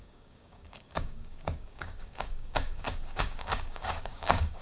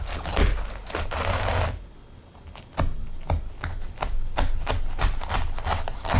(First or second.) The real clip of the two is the second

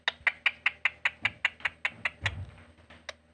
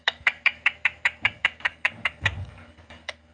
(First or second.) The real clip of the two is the first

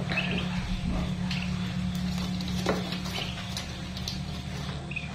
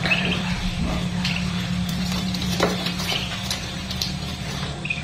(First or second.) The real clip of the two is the first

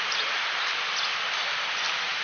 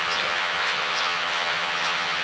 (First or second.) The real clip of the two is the first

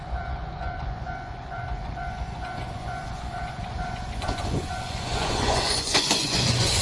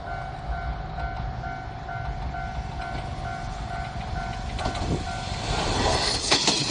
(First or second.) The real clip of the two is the second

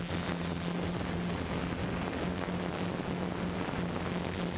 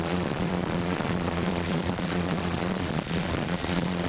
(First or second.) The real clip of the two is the first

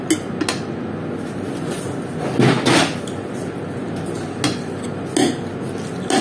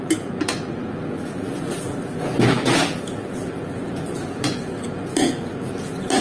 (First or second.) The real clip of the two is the first